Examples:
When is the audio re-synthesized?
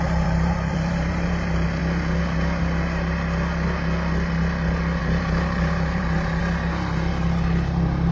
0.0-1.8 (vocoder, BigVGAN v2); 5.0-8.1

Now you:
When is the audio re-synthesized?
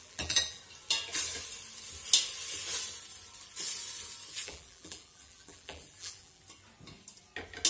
0.0-0.6 (vocoder, BigVGAN v2); 4.4-6.4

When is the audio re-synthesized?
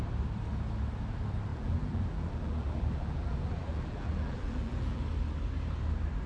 1.5-5.0 (vocoder, BigVGAN v2)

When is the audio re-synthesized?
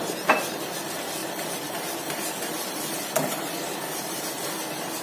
1.2-4.2 (vocoder, BigVGAN v2)